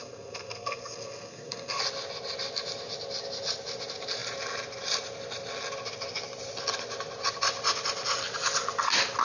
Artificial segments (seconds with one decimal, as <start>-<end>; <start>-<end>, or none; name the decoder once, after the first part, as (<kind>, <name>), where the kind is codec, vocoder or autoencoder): 0.0-1.8 (codec, SNAC)